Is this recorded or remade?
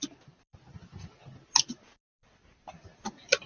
recorded